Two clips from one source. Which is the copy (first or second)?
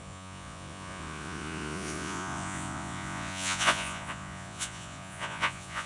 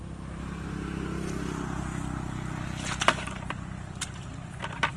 first